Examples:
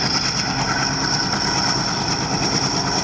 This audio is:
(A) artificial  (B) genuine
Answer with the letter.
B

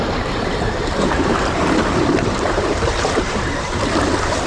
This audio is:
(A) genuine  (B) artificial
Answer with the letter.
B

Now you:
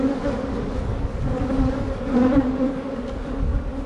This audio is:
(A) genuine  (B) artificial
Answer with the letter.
B